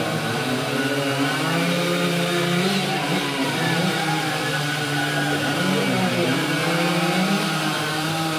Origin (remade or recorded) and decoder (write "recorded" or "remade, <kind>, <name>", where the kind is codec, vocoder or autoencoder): remade, vocoder, BigVGAN v2